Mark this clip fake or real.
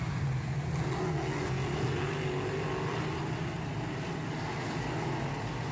real